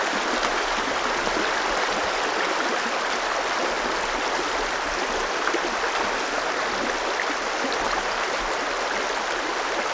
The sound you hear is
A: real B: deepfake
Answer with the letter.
A